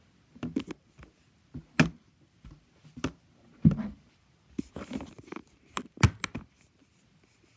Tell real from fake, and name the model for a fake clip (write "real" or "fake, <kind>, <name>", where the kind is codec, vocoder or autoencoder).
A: real